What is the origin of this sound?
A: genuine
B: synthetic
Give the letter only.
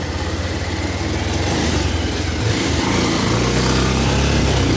A